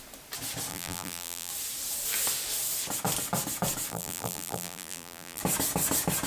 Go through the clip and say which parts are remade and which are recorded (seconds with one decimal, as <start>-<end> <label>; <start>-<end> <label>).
0.0-0.7 recorded; 0.7-1.5 remade; 1.5-3.9 recorded; 3.9-5.4 remade; 5.4-6.3 recorded